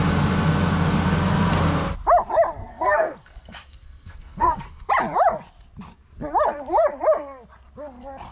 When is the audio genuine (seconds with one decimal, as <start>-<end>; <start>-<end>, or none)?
0.0-2.6; 4.9-8.3